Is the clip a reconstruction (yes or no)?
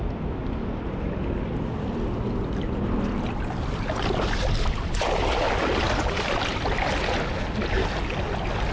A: no